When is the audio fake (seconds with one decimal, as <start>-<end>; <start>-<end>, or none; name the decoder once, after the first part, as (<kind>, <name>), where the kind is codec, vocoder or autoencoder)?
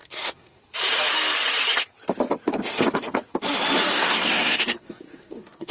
0.0-0.6 (codec, SNAC); 3.9-5.7